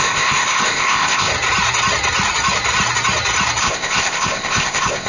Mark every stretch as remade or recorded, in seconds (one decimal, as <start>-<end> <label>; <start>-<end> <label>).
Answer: 0.0-1.3 remade; 1.3-3.6 recorded; 3.6-5.1 remade